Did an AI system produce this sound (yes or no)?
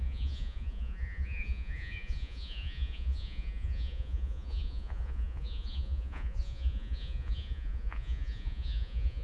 yes